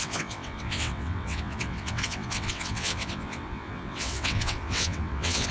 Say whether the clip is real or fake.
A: fake